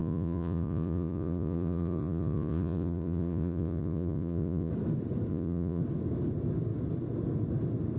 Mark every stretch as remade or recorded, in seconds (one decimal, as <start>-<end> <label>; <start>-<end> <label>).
0.0-4.7 remade; 4.7-5.3 recorded; 5.3-5.8 remade; 5.8-8.0 recorded